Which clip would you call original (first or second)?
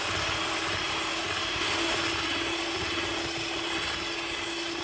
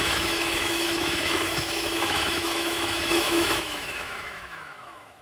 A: first